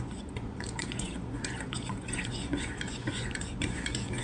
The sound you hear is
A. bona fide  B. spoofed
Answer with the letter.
B